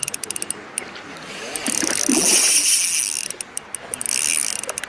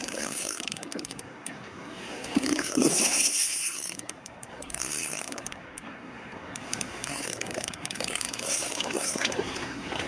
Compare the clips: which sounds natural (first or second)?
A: first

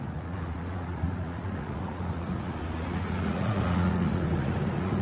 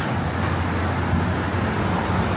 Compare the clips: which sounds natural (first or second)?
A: second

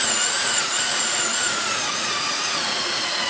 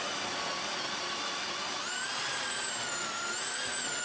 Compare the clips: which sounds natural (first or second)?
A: second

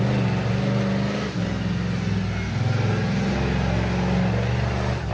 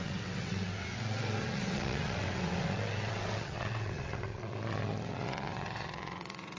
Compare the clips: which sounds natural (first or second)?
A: first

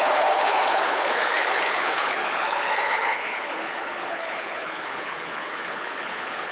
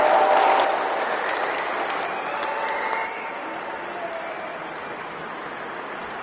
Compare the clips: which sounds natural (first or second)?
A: second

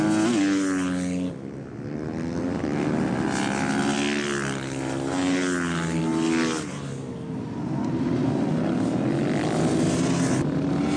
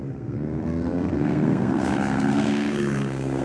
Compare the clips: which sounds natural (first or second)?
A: first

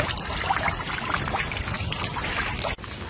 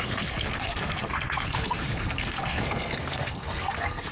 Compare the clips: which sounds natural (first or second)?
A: first